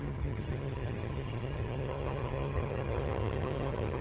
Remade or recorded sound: remade